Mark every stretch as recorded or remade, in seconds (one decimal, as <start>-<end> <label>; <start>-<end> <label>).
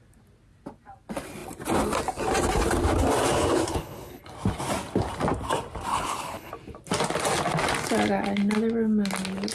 0.0-3.7 recorded; 3.7-4.2 remade; 4.2-5.9 recorded; 5.9-6.5 remade; 6.5-9.5 recorded